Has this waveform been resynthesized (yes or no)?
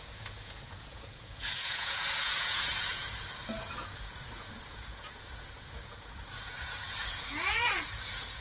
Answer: yes